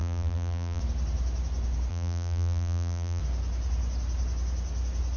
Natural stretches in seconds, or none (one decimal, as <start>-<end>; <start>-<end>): 0.8-1.9; 3.2-5.2